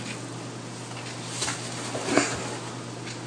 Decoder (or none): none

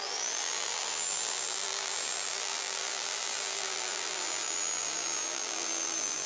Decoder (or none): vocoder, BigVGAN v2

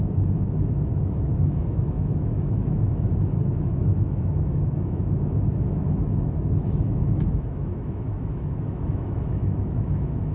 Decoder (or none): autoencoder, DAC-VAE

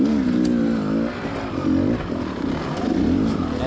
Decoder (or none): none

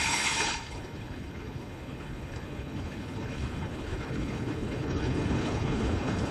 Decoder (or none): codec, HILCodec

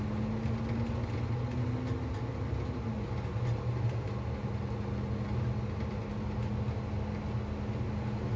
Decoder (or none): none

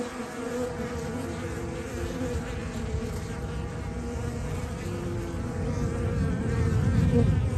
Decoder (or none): none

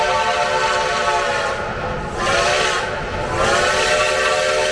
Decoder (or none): none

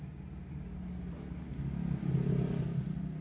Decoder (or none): none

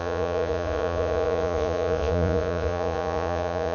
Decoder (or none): vocoder, Vocos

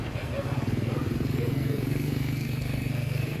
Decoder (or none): codec, SNAC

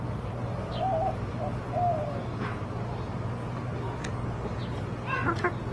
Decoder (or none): none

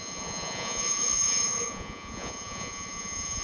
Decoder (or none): vocoder, Vocos